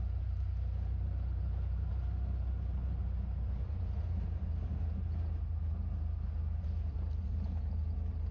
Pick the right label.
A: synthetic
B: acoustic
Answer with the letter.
B